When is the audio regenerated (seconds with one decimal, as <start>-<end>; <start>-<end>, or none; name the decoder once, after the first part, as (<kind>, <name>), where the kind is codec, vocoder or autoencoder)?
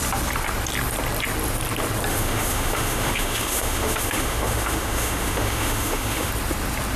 2.1-6.3 (autoencoder, DAC-VAE)